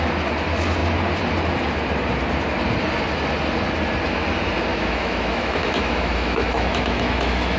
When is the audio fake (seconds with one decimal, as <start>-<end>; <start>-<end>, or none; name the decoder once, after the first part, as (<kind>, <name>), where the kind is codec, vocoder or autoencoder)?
4.7-7.6 (autoencoder, DAC-VAE)